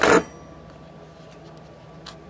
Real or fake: real